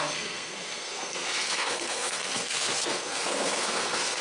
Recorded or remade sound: remade